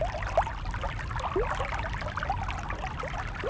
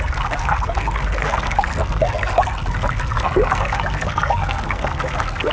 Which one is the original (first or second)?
first